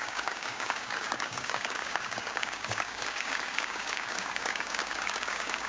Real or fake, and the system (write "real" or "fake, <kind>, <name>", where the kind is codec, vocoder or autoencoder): fake, codec, DAC